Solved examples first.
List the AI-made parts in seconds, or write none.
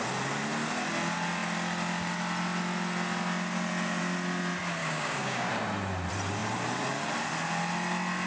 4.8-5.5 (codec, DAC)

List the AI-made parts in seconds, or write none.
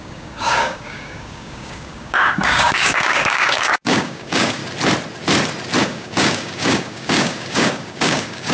0.0-4.6 (codec, DAC); 5.8-8.5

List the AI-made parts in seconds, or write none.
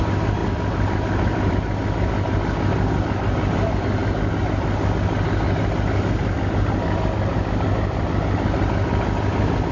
none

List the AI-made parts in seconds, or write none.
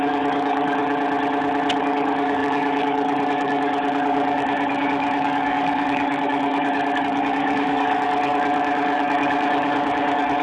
0.0-0.8 (codec, DAC); 1.8-10.4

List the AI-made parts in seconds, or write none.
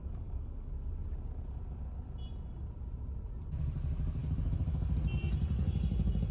0.0-0.7 (codec, DAC); 4.2-4.9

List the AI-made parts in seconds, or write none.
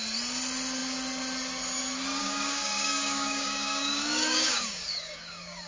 2.2-5.7 (codec, DAC)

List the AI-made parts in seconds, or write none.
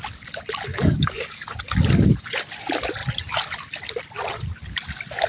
0.7-1.4 (codec, DAC)